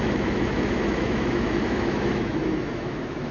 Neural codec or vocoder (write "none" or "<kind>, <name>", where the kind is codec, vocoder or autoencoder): autoencoder, DAC-VAE